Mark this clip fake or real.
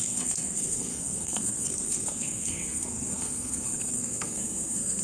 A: fake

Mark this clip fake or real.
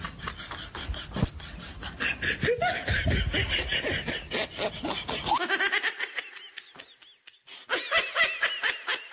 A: real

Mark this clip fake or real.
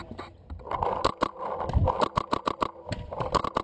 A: real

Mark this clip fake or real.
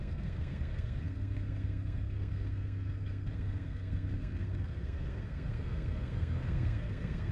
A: fake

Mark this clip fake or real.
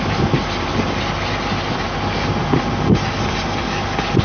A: real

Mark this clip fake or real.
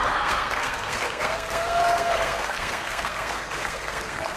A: fake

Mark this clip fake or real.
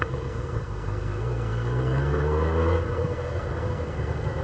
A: fake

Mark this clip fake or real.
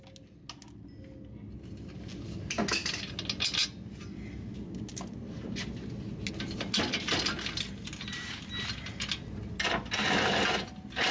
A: real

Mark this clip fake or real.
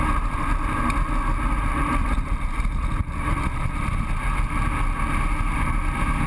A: real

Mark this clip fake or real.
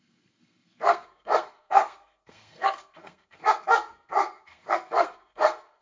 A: fake